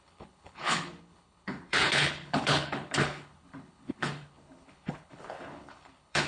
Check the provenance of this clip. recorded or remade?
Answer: remade